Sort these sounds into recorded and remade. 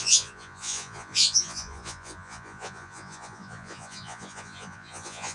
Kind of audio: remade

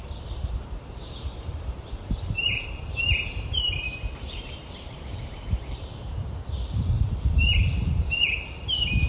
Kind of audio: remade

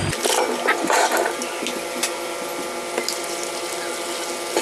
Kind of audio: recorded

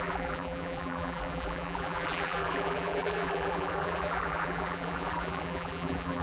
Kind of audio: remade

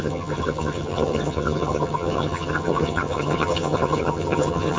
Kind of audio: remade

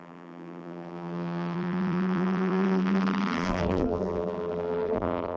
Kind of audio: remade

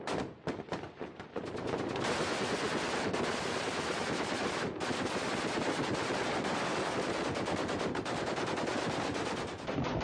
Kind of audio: remade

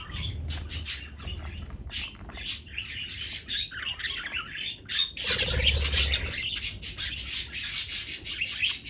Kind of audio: recorded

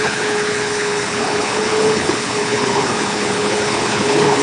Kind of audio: remade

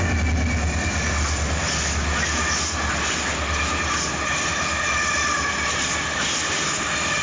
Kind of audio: recorded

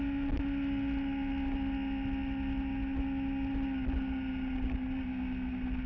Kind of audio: recorded